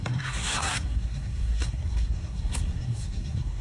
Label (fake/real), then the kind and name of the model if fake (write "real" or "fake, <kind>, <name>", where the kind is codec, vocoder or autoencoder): fake, codec, SNAC